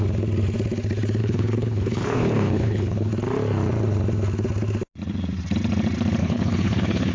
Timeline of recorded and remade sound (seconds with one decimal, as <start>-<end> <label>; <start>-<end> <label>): 0.0-1.2 recorded; 1.2-3.1 remade; 3.1-6.2 recorded; 6.2-7.1 remade